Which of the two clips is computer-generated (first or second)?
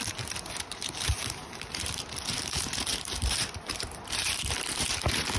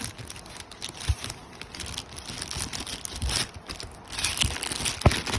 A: first